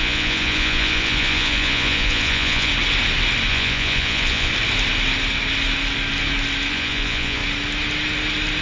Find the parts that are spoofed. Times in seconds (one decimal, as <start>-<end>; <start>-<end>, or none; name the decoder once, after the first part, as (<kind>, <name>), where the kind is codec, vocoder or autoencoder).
0.0-2.7 (vocoder, Vocos); 3.5-4.5; 6.7-7.4